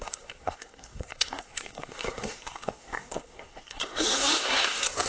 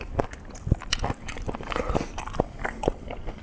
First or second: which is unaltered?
second